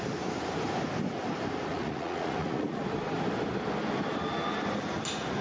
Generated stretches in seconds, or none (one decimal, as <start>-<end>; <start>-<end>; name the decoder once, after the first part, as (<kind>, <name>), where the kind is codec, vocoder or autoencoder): 1.7-2.8 (vocoder, Vocos)